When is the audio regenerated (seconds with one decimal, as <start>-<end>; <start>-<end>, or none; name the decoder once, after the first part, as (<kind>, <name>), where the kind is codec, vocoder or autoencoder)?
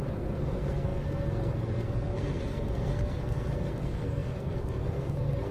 0.0-5.5 (codec, SNAC)